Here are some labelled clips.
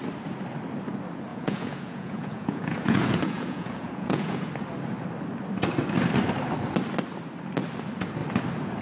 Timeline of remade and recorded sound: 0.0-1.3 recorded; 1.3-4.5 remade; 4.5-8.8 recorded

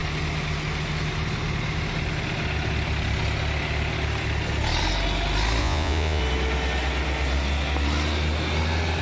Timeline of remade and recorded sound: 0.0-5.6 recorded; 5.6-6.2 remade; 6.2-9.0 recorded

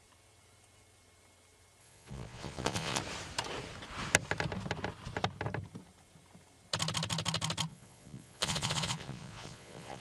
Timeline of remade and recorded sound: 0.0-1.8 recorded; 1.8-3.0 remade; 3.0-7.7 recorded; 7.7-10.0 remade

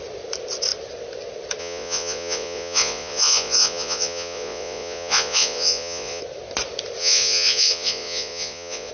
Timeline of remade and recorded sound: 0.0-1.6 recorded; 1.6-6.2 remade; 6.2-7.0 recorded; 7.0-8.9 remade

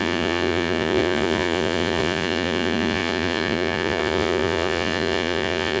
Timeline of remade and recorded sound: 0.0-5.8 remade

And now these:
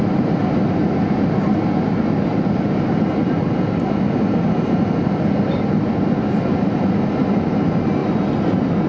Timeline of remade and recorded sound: 0.0-8.9 recorded

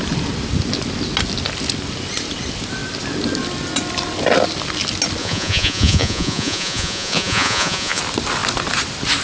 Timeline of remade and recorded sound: 0.0-5.2 recorded; 5.2-8.0 remade; 8.0-9.2 recorded